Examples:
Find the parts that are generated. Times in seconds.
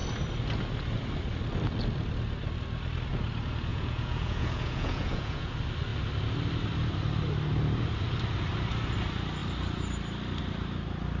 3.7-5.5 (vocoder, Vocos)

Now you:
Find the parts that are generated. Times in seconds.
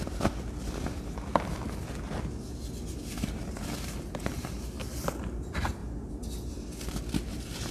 none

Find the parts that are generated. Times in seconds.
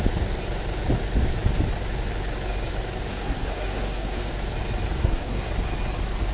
3.1-4.3 (codec, SNAC); 5.0-5.5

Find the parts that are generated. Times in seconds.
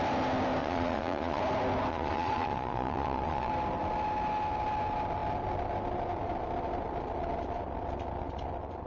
0.6-1.4 (vocoder, Vocos); 1.9-3.5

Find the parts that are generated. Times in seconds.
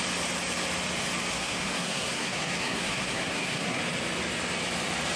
1.3-3.8 (codec, SNAC)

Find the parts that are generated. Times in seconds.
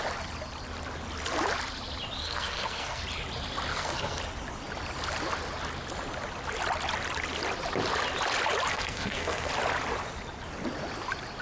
2.2-3.0 (codec, SNAC); 3.7-4.2; 8.7-9.5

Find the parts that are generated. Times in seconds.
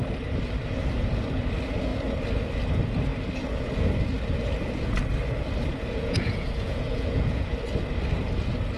5.7-7.5 (vocoder, Vocos)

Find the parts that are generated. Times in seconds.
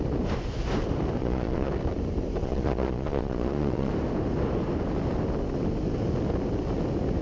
1.2-1.7 (vocoder, Vocos); 2.4-3.9